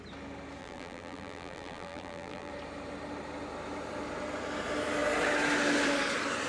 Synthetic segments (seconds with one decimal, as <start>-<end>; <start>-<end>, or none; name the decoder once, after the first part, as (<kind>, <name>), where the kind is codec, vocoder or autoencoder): 0.6-2.5 (vocoder, BigVGAN v2)